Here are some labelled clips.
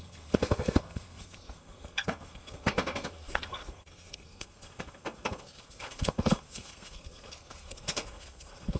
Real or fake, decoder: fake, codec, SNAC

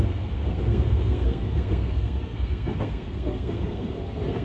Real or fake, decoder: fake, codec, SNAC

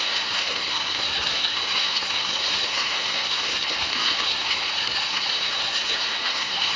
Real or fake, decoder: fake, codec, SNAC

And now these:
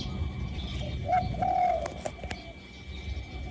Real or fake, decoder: real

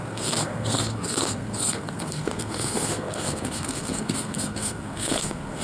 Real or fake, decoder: fake, codec, SNAC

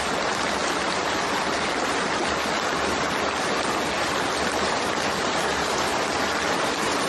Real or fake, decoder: real